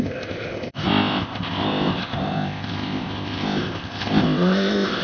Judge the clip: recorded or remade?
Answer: remade